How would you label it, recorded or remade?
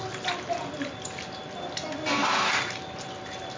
recorded